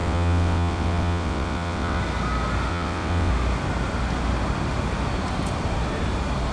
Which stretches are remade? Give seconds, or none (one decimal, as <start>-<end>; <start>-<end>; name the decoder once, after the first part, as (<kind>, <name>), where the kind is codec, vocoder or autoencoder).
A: 0.0-2.0 (vocoder, WaveNeXt); 2.7-3.3